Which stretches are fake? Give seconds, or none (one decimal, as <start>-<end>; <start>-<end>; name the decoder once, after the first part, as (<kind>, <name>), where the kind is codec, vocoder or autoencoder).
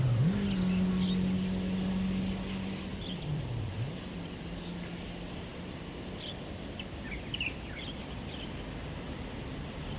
2.9-3.7 (vocoder, BigVGAN v2); 5.5-8.0